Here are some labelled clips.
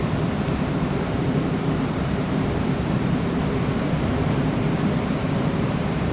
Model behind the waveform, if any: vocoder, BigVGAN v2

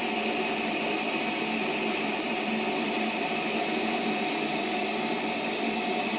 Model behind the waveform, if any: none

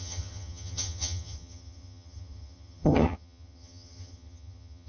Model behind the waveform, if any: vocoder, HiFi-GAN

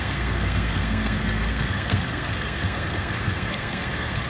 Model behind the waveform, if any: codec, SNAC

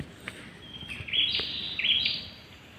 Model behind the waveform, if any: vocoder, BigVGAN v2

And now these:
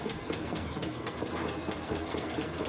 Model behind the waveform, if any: codec, SNAC